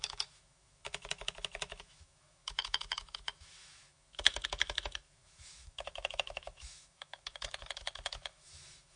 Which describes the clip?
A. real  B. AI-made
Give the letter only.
B